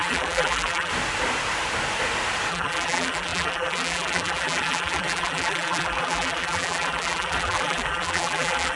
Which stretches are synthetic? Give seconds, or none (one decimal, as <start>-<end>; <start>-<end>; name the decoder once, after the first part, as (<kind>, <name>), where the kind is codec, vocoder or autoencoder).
0.0-0.9 (vocoder, BigVGAN v2); 2.5-8.8